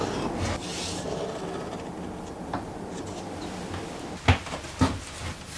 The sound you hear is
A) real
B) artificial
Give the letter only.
A